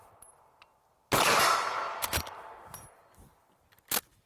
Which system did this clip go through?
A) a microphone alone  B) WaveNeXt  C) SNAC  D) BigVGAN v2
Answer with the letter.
A